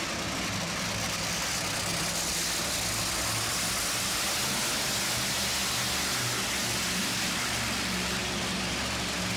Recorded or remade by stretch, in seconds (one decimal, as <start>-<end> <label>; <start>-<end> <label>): 0.0-9.4 recorded